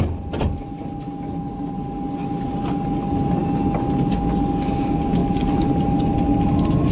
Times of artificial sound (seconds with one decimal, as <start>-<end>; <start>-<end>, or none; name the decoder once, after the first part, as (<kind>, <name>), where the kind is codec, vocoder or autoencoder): none